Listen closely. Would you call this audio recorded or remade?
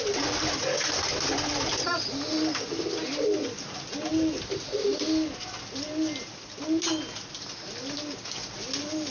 recorded